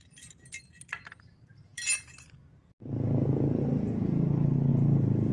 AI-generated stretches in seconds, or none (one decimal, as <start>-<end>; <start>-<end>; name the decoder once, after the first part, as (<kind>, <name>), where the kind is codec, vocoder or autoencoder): none